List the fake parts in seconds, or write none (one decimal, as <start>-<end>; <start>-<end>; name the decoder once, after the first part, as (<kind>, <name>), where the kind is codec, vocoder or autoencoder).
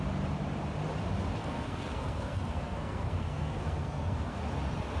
1.4-4.4 (codec, SNAC)